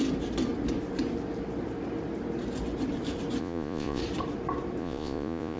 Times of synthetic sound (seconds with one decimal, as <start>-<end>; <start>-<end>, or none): 3.4-4.0; 4.8-5.6